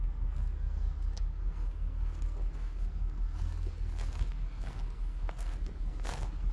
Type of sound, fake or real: fake